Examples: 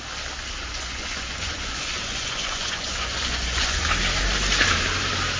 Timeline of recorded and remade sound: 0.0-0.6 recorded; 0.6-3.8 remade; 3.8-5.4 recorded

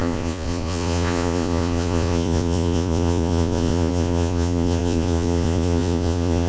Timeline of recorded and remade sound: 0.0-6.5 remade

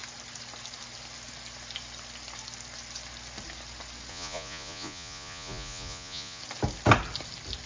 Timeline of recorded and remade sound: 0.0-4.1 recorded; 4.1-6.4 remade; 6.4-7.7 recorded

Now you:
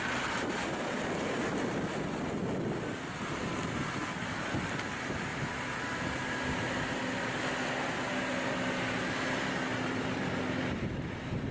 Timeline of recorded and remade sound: 0.0-11.5 recorded

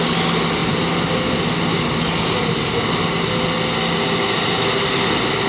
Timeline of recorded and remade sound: 0.0-5.5 recorded

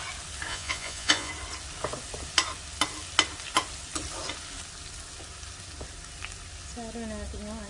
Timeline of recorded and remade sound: 0.0-0.5 recorded; 0.5-1.3 remade; 1.3-7.7 recorded

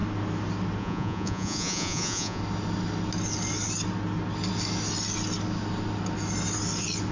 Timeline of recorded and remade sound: 0.0-0.8 recorded; 0.8-2.4 remade; 2.4-7.1 recorded